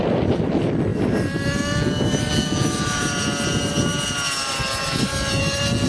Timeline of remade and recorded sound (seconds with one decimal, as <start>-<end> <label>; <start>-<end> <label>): 0.0-5.9 recorded